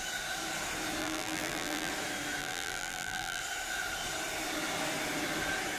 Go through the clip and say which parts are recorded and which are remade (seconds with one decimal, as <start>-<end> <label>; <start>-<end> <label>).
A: 0.0-1.0 recorded; 1.0-1.9 remade; 1.9-2.4 recorded; 2.4-3.4 remade; 3.4-5.8 recorded